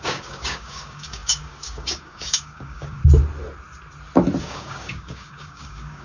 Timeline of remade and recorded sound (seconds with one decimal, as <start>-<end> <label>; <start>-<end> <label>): 0.0-3.0 remade; 3.0-4.4 recorded; 4.4-6.0 remade